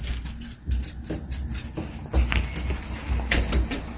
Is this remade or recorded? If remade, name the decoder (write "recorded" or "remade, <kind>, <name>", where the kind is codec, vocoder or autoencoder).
recorded